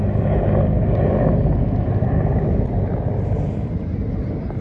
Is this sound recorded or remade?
recorded